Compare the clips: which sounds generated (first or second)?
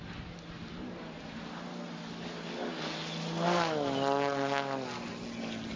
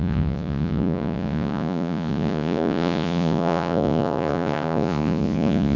second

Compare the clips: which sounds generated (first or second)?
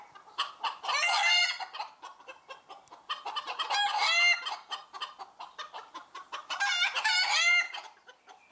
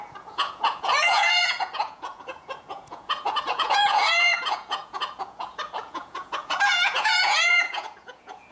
second